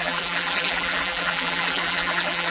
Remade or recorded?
remade